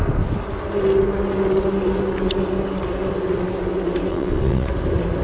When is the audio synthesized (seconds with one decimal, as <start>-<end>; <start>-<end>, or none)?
4.1-4.7